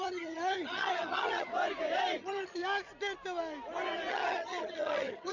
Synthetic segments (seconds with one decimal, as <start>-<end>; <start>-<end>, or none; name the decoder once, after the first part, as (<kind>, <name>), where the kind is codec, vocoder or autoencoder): 0.0-1.5 (vocoder, HiFi-GAN); 2.2-2.6; 4.1-5.3